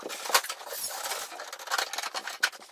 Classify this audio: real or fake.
real